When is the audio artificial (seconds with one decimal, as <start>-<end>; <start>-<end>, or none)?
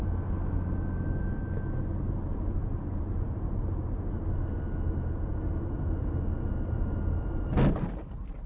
2.3-4.0